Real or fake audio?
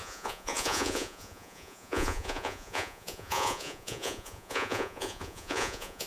fake